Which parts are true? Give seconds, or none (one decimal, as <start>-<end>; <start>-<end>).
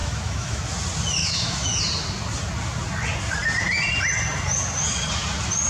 0.6-1.2; 1.8-5.7